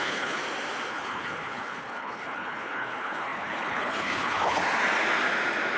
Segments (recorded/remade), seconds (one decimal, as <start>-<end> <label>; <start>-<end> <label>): 0.0-0.4 remade; 0.4-0.9 recorded; 0.9-4.6 remade; 4.6-5.8 recorded